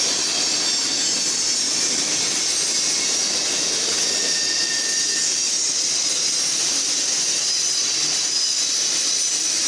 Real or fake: real